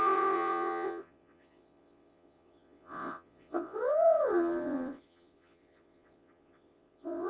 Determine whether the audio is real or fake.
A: fake